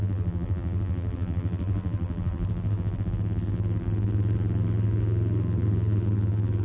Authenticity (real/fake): fake